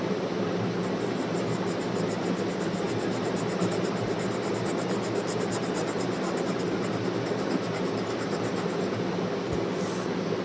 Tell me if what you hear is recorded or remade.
recorded